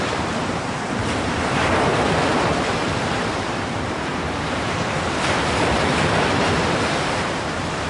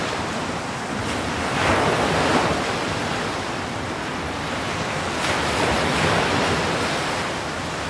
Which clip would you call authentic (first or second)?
second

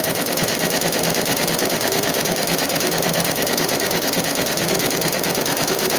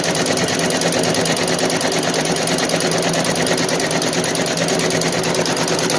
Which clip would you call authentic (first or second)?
second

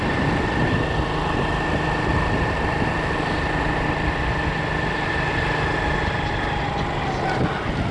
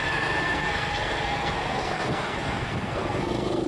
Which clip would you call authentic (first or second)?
first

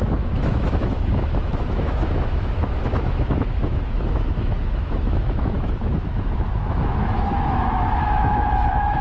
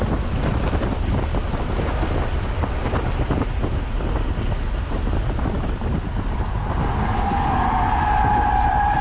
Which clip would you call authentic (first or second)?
second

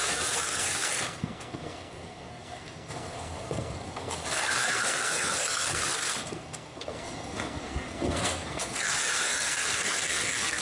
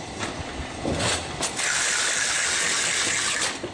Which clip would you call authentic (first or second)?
second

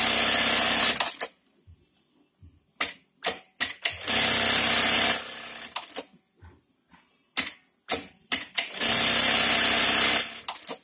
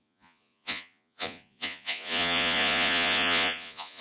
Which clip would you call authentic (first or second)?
first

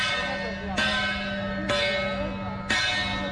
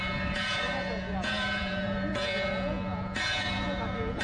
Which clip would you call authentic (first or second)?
first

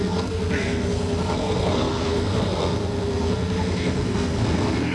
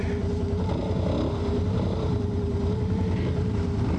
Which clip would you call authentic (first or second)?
second